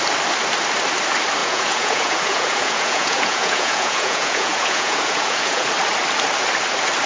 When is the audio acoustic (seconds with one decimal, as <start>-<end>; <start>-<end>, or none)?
0.0-1.4; 5.7-7.1